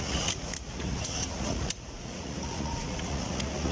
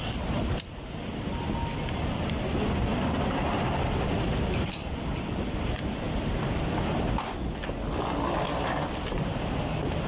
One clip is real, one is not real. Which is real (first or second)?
second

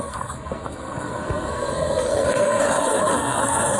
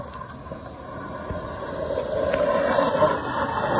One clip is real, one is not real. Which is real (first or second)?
second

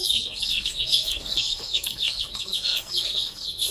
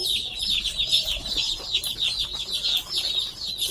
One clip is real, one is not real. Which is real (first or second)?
second